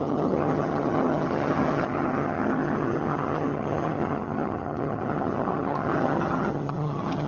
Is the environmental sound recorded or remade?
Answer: remade